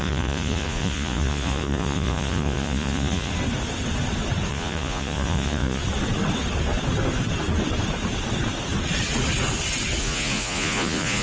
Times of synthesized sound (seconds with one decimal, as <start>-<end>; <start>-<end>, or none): 0.0-3.3; 4.5-5.8; 10.0-11.2